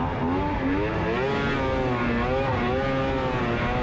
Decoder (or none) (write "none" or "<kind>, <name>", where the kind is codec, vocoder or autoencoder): none